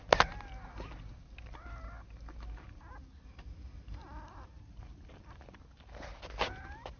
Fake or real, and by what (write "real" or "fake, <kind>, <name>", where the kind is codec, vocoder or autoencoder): real